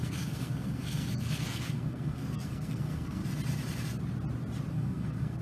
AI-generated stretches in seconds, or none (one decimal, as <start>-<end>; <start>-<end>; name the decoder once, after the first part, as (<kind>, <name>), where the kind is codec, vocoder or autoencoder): 0.0-3.2 (codec, SNAC); 4.7-5.4

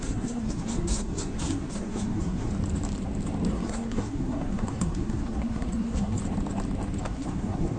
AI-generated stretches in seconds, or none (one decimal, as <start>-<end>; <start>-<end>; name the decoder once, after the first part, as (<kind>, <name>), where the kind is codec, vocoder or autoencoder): 0.0-2.5 (codec, SNAC); 3.5-6.2; 7.0-7.8

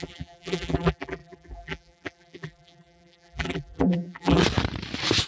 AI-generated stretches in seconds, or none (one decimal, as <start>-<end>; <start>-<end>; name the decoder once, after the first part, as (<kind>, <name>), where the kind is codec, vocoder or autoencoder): 0.0-4.4 (vocoder, BigVGAN v2)

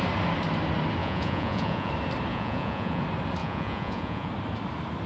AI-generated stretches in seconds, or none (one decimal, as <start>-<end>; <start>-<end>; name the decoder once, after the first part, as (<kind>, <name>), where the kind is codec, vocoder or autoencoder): 1.0-1.9 (vocoder, Vocos); 2.3-3.0; 3.4-4.3

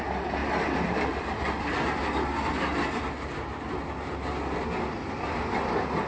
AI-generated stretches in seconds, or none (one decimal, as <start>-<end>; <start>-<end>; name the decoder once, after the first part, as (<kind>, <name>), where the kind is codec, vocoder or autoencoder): 0.4-1.1 (vocoder, BigVGAN v2)

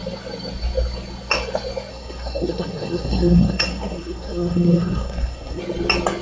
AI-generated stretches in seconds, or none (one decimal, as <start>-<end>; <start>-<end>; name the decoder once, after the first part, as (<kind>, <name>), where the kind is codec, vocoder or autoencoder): 1.9-5.6 (codec, SNAC)